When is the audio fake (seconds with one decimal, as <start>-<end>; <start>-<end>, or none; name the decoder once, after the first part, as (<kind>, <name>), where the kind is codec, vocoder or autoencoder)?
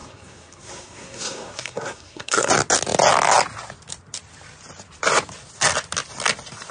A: 0.0-2.5 (codec, SNAC)